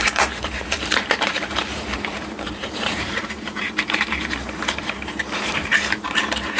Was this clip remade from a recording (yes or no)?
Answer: yes